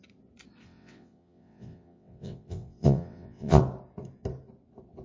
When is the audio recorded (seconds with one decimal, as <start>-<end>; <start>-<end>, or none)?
0.0-0.6; 3.6-5.0